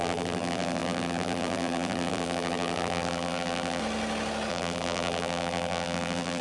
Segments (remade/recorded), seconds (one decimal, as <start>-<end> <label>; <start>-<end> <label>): 0.0-3.8 remade; 3.8-4.5 recorded; 4.5-6.4 remade